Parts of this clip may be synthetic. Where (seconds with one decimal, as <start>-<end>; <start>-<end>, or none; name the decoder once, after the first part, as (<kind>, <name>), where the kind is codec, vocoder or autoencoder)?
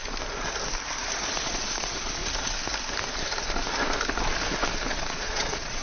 1.3-2.2 (vocoder, Vocos); 4.9-5.8